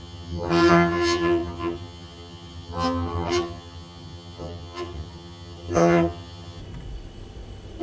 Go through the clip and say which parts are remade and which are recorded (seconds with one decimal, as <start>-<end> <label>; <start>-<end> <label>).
0.0-6.6 remade; 6.6-7.8 recorded

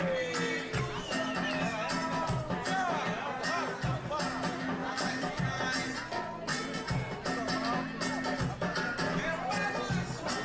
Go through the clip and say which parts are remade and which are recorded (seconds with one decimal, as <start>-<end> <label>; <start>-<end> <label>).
0.0-4.8 recorded; 4.8-5.4 remade; 5.4-6.5 recorded; 6.5-7.4 remade; 7.4-10.4 recorded

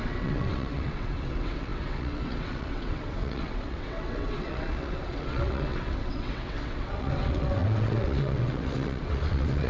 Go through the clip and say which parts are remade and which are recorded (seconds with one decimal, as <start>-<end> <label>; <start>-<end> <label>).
0.0-9.7 remade

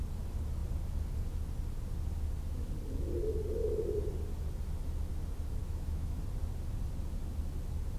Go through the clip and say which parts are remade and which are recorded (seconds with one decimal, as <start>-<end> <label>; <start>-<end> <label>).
0.0-5.6 recorded; 5.6-6.2 remade; 6.2-8.0 recorded

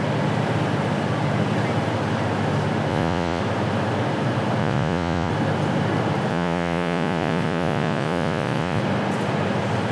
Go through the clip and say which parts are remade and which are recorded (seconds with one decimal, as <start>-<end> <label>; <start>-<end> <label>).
0.0-2.9 recorded; 2.9-3.4 remade; 3.4-4.6 recorded; 4.6-5.3 remade; 5.3-6.3 recorded; 6.3-8.8 remade; 8.8-9.9 recorded